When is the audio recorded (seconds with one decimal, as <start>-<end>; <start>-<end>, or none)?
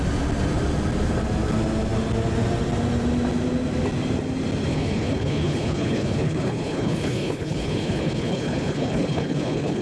0.0-4.7